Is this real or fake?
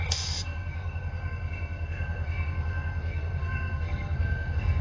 fake